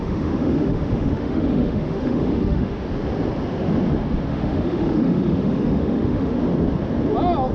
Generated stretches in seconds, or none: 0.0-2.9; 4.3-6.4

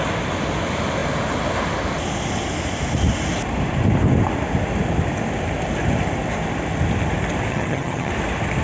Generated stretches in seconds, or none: 7.5-8.1

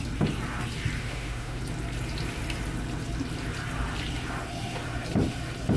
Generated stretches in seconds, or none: 1.0-1.6

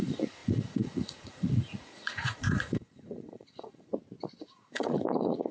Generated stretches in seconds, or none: 0.0-3.9; 4.4-5.5

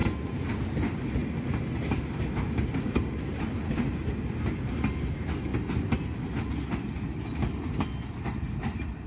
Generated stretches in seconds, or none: none

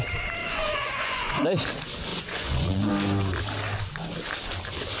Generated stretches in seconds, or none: 0.4-1.6; 2.1-2.9